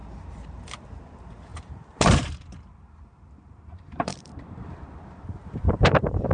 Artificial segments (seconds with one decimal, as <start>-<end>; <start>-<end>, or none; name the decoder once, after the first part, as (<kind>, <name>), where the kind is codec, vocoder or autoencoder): 0.0-6.3 (vocoder, BigVGAN v2)